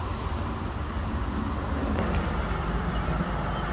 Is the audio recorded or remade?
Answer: recorded